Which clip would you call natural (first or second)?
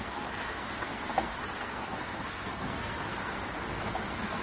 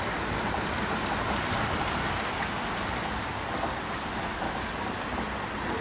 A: second